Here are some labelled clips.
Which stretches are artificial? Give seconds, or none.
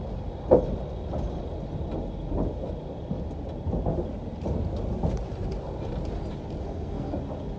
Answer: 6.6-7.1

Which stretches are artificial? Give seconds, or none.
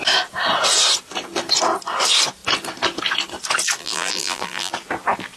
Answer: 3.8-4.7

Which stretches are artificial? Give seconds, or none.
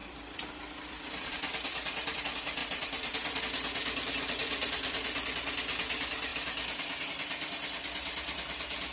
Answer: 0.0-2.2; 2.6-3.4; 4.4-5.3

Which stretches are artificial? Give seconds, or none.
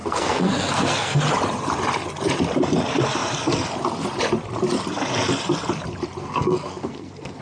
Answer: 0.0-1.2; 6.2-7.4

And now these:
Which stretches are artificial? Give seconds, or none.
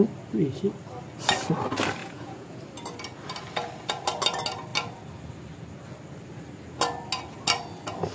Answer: 2.0-2.6